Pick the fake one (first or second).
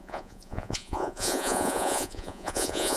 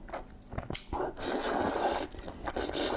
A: first